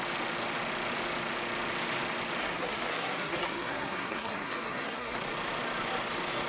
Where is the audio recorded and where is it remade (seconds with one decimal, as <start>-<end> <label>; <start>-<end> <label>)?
0.0-2.4 recorded; 2.4-5.2 remade; 5.2-6.5 recorded